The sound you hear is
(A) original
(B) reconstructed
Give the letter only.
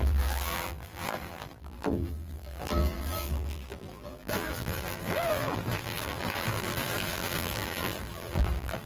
B